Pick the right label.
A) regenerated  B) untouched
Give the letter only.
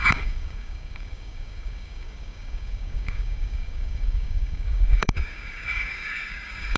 A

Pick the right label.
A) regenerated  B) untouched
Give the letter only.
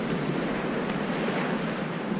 B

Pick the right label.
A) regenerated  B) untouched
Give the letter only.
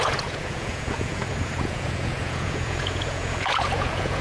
A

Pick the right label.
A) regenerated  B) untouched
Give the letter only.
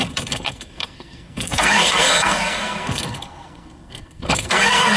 A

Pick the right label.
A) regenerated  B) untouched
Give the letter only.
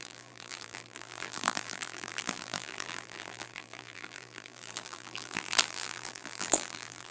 A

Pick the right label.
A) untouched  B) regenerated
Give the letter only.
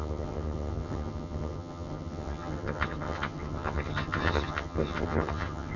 B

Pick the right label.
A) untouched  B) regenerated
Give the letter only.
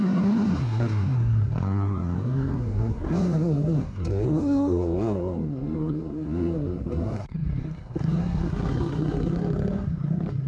B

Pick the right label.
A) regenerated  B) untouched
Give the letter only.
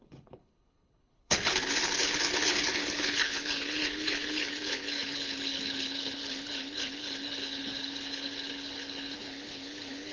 A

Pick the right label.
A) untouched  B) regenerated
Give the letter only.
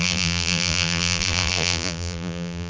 B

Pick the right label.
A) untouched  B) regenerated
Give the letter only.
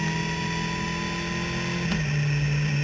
A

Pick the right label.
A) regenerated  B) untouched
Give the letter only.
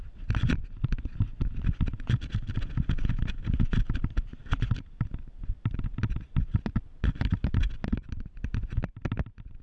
B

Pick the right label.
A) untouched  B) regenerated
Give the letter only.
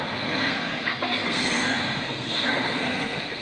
B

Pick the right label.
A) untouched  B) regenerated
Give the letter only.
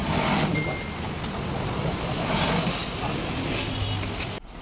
A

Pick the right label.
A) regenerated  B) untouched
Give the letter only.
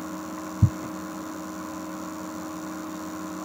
B